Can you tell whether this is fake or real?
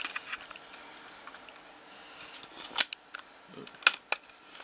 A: real